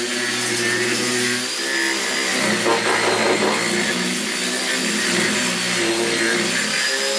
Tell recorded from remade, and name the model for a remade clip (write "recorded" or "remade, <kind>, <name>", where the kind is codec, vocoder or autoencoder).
recorded